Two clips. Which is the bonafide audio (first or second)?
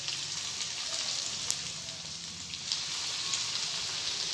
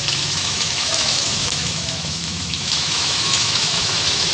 first